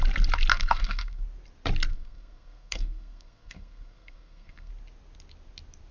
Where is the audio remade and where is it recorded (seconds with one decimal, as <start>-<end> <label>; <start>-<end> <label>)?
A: 0.0-0.5 recorded; 0.5-1.2 remade; 1.2-1.9 recorded; 1.9-4.7 remade; 4.7-5.9 recorded